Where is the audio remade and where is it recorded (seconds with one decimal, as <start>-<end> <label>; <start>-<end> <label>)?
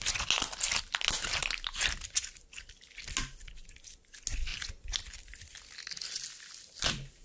0.0-7.2 recorded